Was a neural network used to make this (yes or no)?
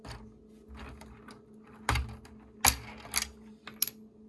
no